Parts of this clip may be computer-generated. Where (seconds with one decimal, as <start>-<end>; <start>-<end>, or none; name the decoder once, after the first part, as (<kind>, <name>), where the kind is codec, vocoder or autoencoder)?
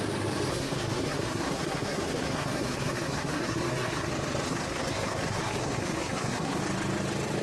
0.5-4.1 (codec, SNAC); 4.5-6.6